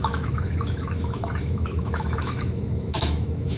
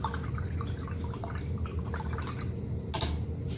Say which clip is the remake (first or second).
first